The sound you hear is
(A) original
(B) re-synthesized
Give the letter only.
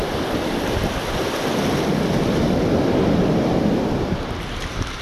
A